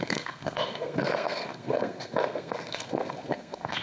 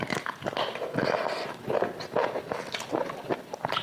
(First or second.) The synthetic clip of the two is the first